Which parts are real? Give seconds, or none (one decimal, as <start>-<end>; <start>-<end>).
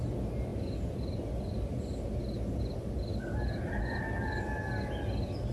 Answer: 0.0-5.5